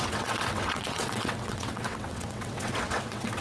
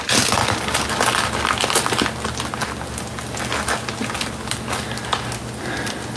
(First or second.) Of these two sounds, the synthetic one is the first